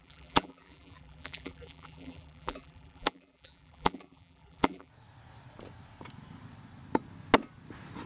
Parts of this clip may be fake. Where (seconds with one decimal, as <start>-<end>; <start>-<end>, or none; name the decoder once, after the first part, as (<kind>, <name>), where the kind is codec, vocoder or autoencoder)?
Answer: 0.0-4.9 (vocoder, BigVGAN v2)